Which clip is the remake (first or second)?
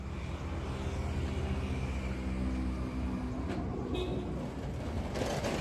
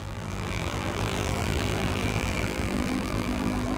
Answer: second